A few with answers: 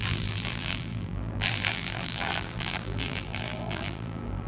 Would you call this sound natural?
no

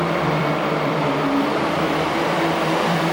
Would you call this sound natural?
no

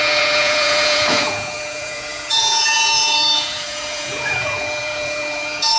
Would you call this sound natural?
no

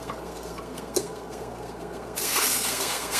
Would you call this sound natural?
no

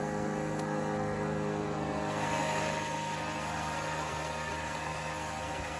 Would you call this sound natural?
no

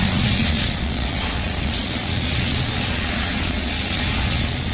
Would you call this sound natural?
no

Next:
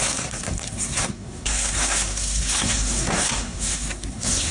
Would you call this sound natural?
no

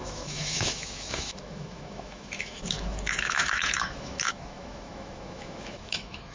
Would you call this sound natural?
no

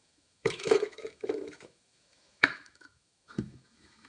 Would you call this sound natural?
no